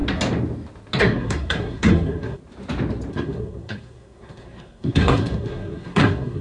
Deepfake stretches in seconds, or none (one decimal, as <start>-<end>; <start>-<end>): 1.0-2.4; 3.1-6.4